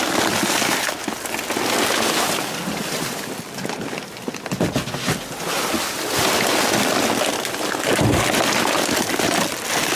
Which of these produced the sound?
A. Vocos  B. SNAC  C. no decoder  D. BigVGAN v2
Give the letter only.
C